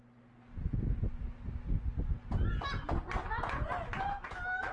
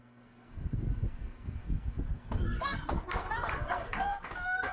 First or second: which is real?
first